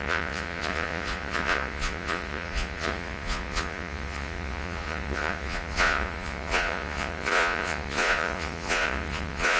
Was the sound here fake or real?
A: fake